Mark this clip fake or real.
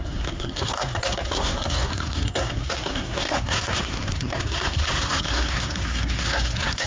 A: fake